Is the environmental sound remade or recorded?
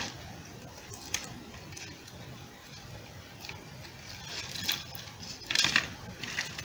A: recorded